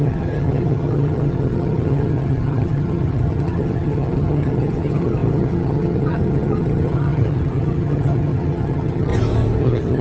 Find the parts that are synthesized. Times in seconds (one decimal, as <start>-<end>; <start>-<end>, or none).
0.0-9.1; 9.6-10.0